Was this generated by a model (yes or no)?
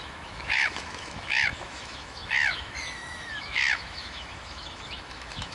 yes